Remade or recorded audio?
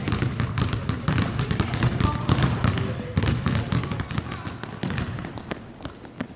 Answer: recorded